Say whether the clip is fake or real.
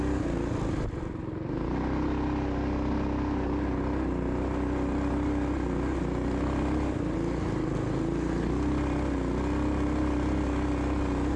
real